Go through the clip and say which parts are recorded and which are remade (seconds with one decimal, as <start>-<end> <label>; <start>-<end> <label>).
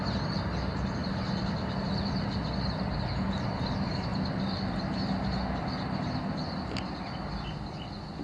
0.0-8.2 recorded